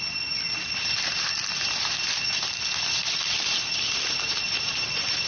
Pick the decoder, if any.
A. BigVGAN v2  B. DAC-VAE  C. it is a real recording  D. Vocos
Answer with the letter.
C